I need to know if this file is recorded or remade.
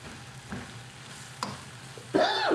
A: recorded